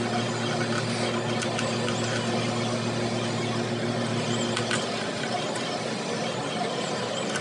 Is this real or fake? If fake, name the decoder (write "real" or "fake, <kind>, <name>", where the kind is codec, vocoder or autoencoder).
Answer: real